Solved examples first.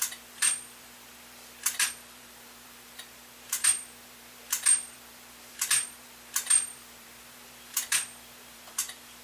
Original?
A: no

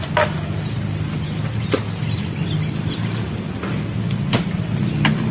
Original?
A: yes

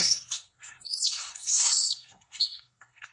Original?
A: no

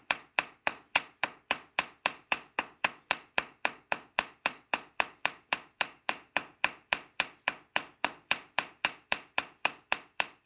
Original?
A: no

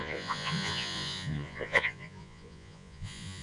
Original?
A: no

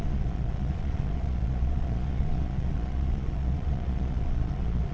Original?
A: no